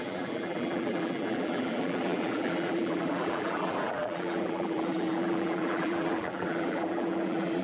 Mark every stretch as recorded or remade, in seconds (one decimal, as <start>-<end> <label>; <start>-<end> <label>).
0.0-7.6 remade